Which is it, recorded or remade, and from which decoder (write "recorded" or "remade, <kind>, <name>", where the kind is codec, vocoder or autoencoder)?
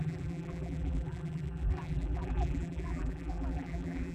remade, vocoder, BigVGAN v2